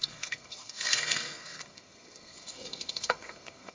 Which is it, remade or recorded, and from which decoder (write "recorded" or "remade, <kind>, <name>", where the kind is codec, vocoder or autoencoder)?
remade, codec, SNAC